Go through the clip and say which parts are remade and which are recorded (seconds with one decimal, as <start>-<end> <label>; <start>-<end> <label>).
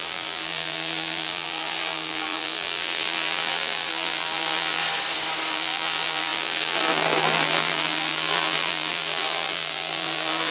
0.0-4.8 remade; 4.8-5.5 recorded; 5.5-10.5 remade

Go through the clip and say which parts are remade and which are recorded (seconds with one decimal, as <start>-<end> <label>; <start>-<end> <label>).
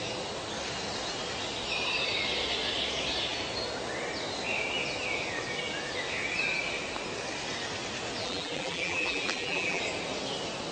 0.0-8.2 recorded; 8.2-9.8 remade; 9.8-10.7 recorded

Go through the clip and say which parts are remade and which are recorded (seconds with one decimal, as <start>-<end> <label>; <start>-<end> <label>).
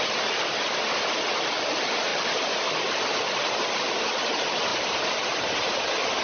0.0-2.1 recorded; 2.1-3.4 remade; 3.4-4.7 recorded; 4.7-5.5 remade; 5.5-6.2 recorded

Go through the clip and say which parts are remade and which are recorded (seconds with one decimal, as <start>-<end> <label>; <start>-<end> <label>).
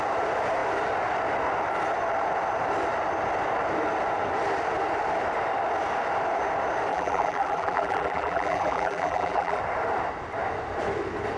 0.0-6.9 recorded; 6.9-9.6 remade; 9.6-11.4 recorded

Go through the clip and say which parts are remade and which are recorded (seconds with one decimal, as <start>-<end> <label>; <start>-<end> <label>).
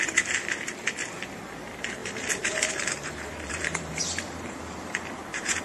0.0-2.0 recorded; 2.0-5.6 remade